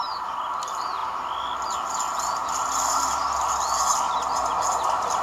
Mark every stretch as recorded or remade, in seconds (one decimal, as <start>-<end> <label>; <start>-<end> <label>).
0.0-5.2 recorded